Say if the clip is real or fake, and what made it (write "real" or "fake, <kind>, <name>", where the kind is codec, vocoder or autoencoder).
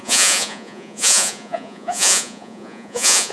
fake, vocoder, Vocos